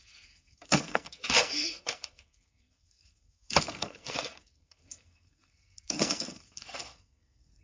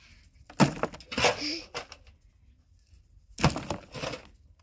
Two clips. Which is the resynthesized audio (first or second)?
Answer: first